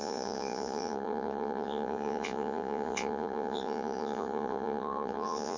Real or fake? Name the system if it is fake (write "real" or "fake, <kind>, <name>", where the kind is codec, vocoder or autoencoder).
fake, vocoder, Vocos